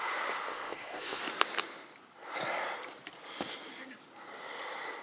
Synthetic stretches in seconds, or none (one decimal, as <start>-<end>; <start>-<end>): 0.5-1.2